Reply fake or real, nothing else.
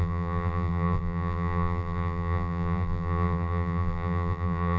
fake